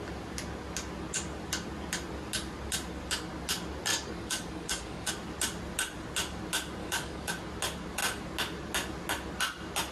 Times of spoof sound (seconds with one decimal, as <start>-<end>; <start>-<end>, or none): 3.9-5.1; 6.8-7.3